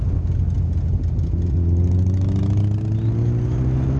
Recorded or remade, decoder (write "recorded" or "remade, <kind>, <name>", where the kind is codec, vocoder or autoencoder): recorded